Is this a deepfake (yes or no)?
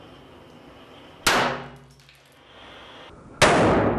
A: no